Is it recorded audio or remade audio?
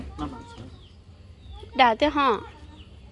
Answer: recorded